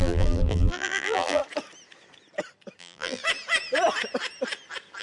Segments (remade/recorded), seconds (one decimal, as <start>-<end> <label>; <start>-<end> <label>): 0.0-1.4 remade; 1.4-2.8 recorded; 2.8-3.2 remade; 3.2-5.0 recorded

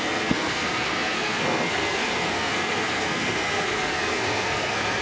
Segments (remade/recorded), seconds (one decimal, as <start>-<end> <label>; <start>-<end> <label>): 0.0-5.0 remade